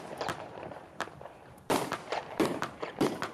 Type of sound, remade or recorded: remade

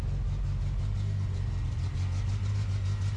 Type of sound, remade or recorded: recorded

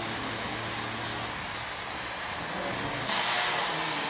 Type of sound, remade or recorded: recorded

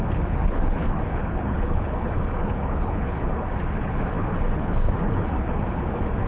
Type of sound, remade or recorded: remade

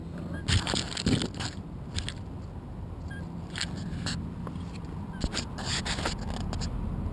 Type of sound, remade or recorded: recorded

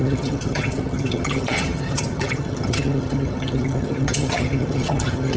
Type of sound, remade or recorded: remade